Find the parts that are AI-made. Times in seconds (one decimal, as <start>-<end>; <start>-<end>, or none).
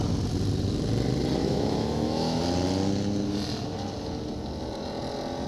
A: 1.4-2.4